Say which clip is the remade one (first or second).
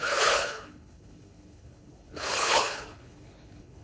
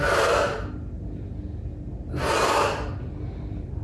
first